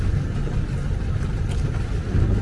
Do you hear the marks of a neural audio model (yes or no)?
no